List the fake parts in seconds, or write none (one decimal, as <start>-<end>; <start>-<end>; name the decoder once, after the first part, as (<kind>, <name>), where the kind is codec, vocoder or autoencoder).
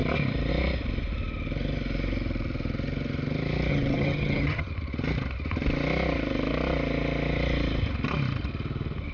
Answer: 3.7-4.7 (vocoder, HiFi-GAN)